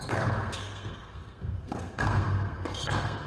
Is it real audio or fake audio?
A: fake